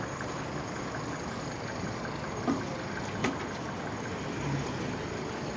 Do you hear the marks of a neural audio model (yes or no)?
no